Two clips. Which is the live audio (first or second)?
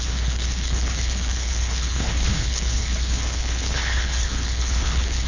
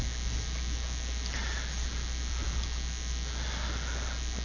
second